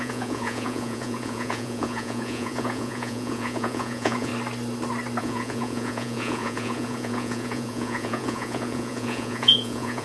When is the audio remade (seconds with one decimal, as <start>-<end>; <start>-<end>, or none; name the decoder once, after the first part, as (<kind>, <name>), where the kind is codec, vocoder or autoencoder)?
0.0-4.3 (vocoder, Vocos); 5.2-10.0

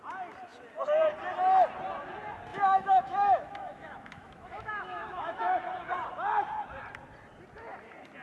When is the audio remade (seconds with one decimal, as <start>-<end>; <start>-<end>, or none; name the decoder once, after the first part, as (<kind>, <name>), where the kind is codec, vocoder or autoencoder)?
2.5-5.6 (autoencoder, DAC-VAE)

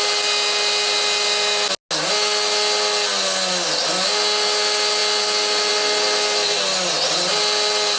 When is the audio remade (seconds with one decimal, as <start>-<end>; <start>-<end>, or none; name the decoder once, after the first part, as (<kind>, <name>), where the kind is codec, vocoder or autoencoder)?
none

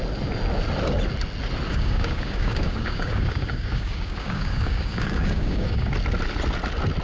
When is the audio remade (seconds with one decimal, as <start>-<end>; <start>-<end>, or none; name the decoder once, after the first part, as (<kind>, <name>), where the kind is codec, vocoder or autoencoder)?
1.7-5.9 (codec, DAC)

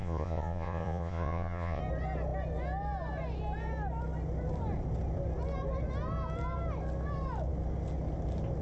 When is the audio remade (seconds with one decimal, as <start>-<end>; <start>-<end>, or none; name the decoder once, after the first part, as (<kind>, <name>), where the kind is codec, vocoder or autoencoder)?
0.0-1.8 (vocoder, Vocos)